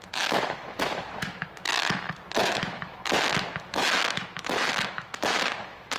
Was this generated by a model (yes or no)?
yes